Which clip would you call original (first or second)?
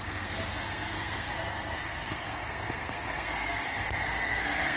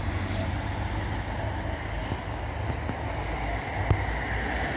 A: second